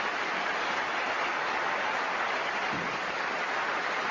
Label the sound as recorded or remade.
recorded